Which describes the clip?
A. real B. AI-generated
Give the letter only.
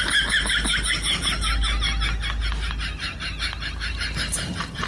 A